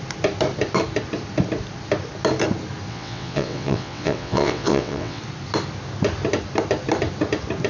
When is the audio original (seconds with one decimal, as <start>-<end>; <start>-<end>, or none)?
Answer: 0.0-2.9; 5.2-7.7